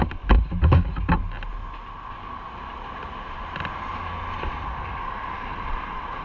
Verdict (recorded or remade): recorded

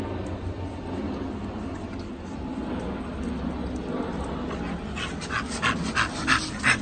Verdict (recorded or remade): recorded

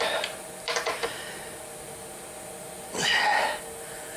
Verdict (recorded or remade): recorded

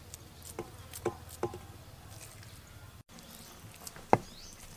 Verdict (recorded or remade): recorded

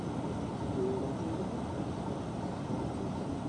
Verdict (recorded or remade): recorded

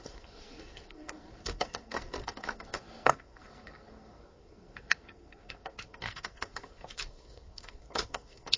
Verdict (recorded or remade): remade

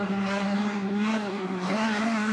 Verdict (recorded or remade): remade